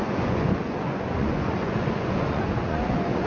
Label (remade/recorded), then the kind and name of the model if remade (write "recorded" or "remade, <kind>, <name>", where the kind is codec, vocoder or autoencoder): remade, vocoder, Vocos